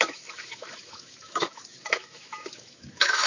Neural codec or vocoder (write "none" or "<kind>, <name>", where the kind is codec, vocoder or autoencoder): autoencoder, DAC-VAE